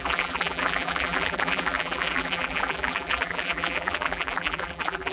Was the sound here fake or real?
fake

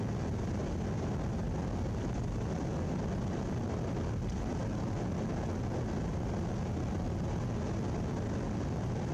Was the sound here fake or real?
real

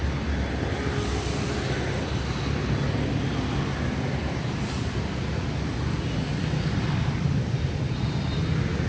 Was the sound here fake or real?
real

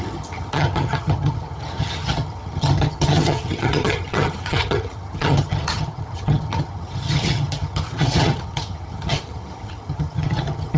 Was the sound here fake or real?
fake